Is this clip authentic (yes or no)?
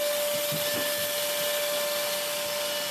yes